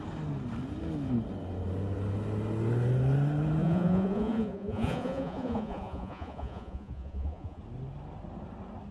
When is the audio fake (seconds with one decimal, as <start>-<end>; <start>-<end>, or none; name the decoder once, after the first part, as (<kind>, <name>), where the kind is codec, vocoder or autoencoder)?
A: 3.6-7.6 (vocoder, Vocos)